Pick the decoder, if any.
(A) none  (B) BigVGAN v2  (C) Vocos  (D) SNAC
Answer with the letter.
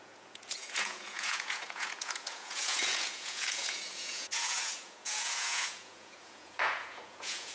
C